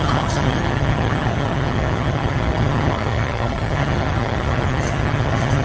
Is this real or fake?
fake